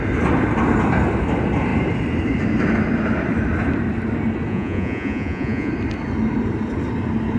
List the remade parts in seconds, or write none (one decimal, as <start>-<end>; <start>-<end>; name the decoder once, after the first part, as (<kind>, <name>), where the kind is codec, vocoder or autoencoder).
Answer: 4.5-5.7 (vocoder, Vocos)